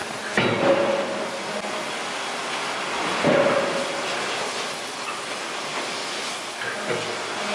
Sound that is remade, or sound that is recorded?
recorded